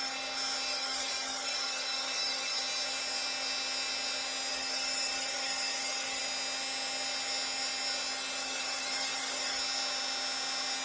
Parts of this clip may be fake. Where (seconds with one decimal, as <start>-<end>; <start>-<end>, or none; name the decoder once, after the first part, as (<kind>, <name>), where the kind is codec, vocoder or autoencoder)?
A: 0.7-2.6 (codec, DAC); 4.5-6.2; 8.4-9.6